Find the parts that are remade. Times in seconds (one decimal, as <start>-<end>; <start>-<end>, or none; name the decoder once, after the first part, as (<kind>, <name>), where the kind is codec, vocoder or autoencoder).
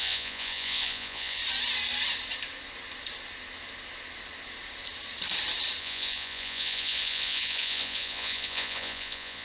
0.0-1.4 (vocoder, Vocos); 5.8-9.4